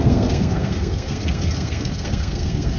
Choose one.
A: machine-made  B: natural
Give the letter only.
A